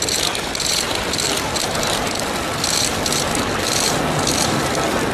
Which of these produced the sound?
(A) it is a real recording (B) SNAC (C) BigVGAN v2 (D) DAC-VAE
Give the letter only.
A